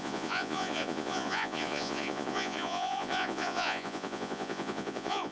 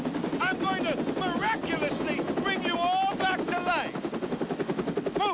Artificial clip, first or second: first